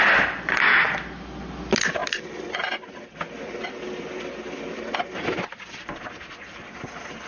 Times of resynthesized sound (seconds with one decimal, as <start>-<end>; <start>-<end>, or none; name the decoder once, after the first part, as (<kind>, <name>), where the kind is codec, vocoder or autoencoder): none